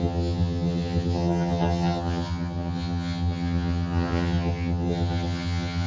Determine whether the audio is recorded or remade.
remade